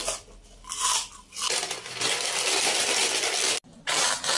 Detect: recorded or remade recorded